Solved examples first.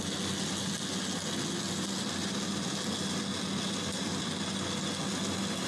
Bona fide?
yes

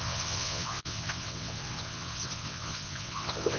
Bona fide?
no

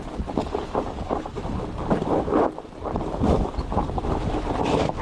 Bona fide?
yes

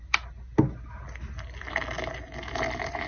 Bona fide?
yes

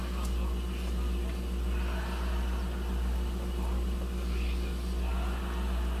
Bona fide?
yes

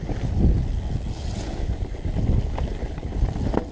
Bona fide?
yes